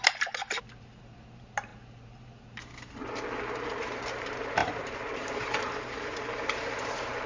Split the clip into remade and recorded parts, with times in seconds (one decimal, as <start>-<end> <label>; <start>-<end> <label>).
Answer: 0.0-3.0 remade; 3.0-3.8 recorded; 3.8-7.3 remade